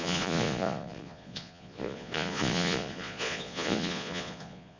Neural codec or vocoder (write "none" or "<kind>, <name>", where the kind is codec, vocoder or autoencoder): vocoder, Vocos